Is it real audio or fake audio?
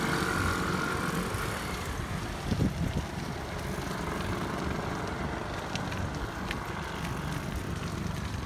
real